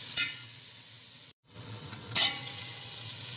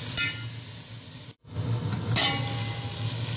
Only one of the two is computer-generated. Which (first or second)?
first